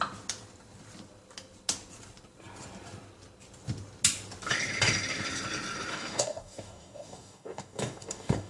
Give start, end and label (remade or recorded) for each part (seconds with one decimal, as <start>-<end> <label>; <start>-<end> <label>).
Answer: 0.0-5.9 recorded; 5.9-8.5 remade